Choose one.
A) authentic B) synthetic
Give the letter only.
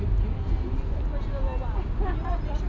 A